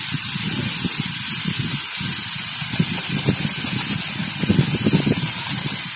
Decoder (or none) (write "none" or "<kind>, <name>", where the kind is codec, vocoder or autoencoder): vocoder, BigVGAN v2